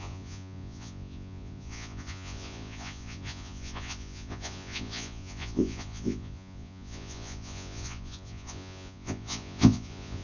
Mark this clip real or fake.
fake